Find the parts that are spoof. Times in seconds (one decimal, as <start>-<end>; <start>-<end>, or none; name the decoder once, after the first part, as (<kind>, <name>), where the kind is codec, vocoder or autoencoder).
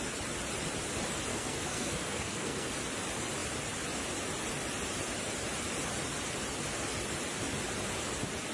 1.3-2.7 (codec, SNAC)